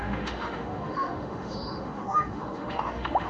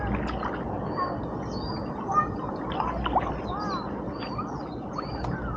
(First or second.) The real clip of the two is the second